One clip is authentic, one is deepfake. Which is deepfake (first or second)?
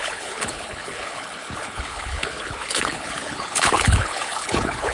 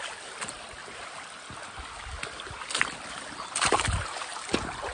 first